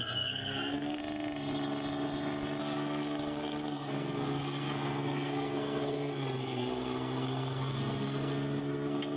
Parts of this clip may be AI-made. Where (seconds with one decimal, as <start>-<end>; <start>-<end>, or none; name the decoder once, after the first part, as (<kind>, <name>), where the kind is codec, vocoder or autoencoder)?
0.0-1.0 (codec, SNAC); 2.6-9.2